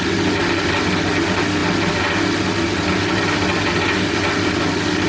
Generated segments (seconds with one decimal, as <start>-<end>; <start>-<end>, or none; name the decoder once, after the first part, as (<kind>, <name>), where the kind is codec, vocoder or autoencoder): none